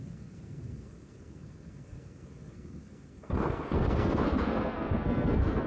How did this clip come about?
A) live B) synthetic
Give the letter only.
B